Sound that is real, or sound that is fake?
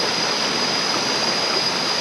real